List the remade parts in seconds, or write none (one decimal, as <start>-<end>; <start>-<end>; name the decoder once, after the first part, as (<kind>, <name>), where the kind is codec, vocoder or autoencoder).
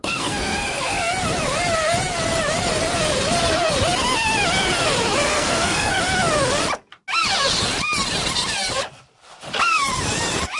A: 0.0-1.1 (codec, SNAC); 5.3-6.0